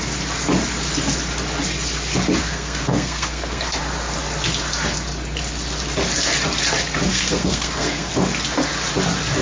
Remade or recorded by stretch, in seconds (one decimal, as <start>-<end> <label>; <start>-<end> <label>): 0.0-2.4 recorded; 2.4-3.8 remade; 3.8-7.1 recorded; 7.1-8.1 remade; 8.1-9.4 recorded